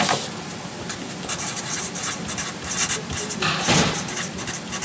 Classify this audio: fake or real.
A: real